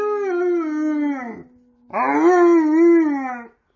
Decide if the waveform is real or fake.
real